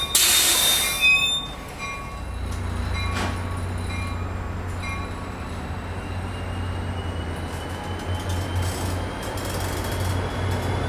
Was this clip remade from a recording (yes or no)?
no